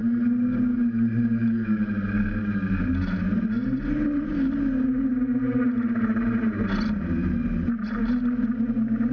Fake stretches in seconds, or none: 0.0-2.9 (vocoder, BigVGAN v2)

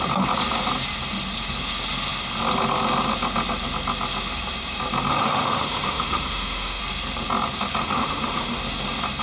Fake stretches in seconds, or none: 5.1-6.8 (autoencoder, DAC-VAE); 7.8-8.6